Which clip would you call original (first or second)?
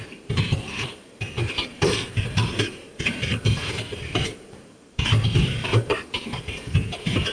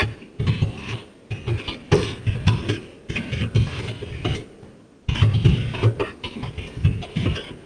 second